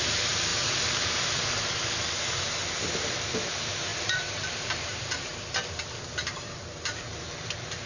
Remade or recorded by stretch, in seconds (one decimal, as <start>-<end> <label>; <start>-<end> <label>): 0.0-0.5 remade; 0.5-2.2 recorded; 2.2-2.6 remade; 2.6-3.5 recorded; 3.5-5.3 remade; 5.3-5.9 recorded; 5.9-7.9 remade